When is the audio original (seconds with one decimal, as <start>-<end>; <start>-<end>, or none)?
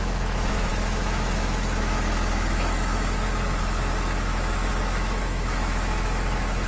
none